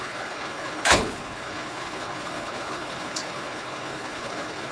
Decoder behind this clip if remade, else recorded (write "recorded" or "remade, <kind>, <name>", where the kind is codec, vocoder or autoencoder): remade, codec, HILCodec